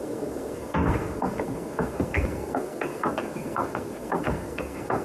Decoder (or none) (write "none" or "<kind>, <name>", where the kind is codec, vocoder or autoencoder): codec, SNAC